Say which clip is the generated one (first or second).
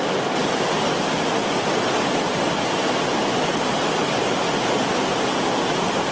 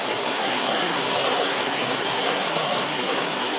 second